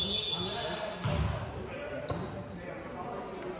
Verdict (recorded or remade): recorded